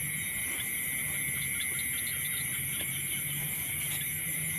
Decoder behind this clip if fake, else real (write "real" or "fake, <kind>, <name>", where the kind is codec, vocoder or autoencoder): real